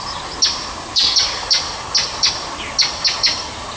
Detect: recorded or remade recorded